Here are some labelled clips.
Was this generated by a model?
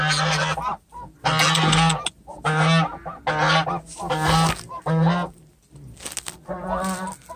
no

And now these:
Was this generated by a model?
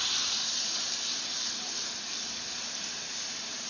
no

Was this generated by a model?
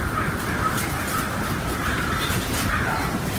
no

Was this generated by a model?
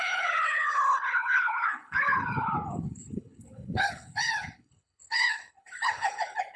yes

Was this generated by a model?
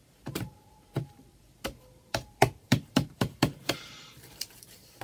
yes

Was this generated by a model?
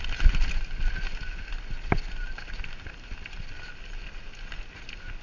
no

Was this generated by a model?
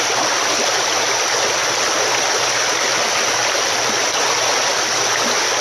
no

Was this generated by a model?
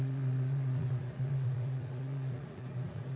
yes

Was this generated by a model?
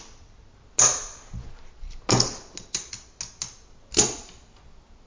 no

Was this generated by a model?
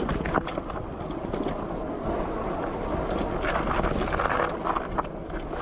no